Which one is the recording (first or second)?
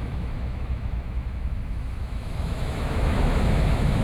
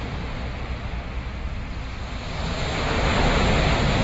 second